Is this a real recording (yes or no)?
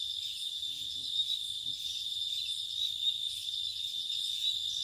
yes